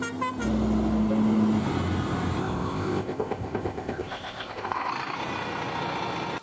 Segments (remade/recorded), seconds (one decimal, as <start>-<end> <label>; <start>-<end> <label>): 0.0-2.4 recorded; 2.4-4.9 remade; 4.9-6.4 recorded